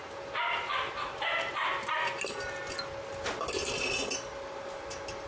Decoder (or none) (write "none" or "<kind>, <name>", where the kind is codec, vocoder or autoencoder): none